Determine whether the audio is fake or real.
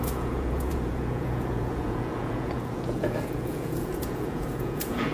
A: fake